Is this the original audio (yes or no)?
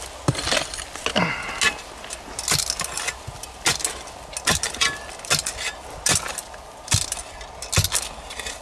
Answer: yes